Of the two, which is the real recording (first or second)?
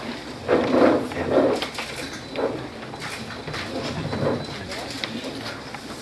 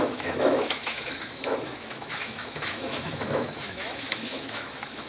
first